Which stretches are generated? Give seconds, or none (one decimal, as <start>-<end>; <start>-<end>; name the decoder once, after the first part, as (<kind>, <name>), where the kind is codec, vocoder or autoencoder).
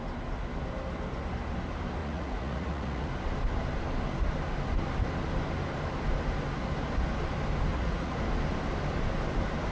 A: 2.0-3.1 (vocoder, Vocos); 7.7-8.2